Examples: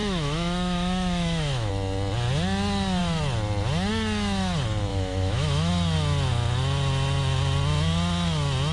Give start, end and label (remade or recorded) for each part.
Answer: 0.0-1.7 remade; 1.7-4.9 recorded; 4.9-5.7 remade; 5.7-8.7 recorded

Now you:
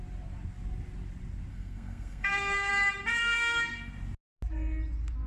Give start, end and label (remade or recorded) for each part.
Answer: 0.0-1.5 recorded; 1.5-2.7 remade; 2.7-3.2 recorded; 3.2-3.9 remade; 3.9-5.3 recorded

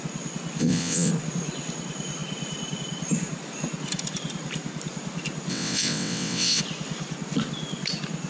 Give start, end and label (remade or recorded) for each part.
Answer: 0.0-0.6 recorded; 0.6-1.1 remade; 1.1-5.5 recorded; 5.5-6.6 remade; 6.6-8.3 recorded

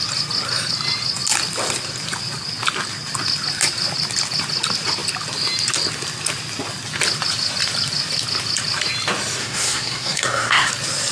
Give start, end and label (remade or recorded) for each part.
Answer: 0.0-9.4 recorded; 9.4-10.7 remade; 10.7-11.1 recorded

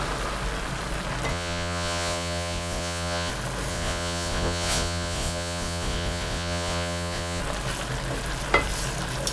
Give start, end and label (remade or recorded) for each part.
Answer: 0.0-1.3 recorded; 1.3-3.3 remade; 3.3-3.7 recorded; 3.7-7.4 remade; 7.4-9.3 recorded

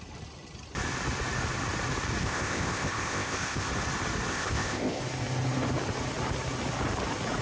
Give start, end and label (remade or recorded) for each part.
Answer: 0.0-2.2 recorded; 2.2-3.7 remade; 3.7-4.3 recorded; 4.3-5.0 remade; 5.0-7.4 recorded

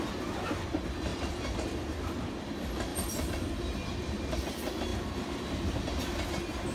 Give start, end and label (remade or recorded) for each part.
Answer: 0.0-1.1 recorded; 1.1-2.4 remade; 2.4-2.9 recorded; 2.9-3.5 remade; 3.5-4.9 recorded; 4.9-6.0 remade; 6.0-6.7 recorded

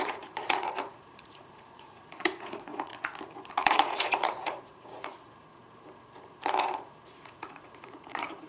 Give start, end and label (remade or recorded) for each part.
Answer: 0.0-2.9 remade; 2.9-3.5 recorded; 3.5-5.6 remade; 5.6-6.6 recorded; 6.6-8.5 remade